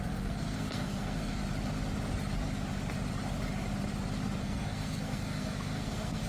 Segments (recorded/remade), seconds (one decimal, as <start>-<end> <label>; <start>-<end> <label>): 0.0-1.4 remade; 1.4-4.4 recorded; 4.4-6.3 remade